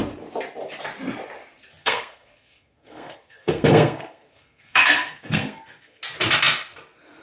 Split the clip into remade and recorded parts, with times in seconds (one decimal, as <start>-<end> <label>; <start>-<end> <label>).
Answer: 0.0-1.8 recorded; 1.8-6.0 remade; 6.0-7.2 recorded